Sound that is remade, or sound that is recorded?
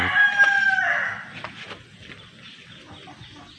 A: recorded